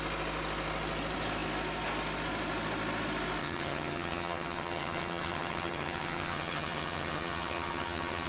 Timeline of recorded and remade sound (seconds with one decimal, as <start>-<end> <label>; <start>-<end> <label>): 0.0-3.4 recorded; 3.4-8.3 remade